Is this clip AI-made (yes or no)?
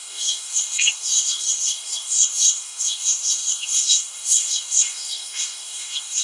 yes